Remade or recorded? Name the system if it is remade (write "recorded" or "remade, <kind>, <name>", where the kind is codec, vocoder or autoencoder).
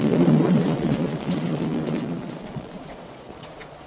remade, vocoder, Vocos